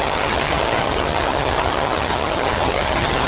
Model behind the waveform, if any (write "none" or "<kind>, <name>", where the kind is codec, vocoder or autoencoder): vocoder, HiFi-GAN